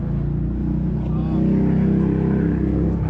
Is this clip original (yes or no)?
yes